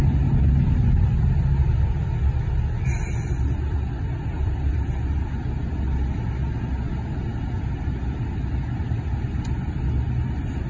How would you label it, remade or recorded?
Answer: recorded